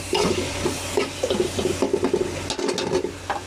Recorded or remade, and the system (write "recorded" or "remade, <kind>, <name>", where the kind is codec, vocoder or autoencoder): recorded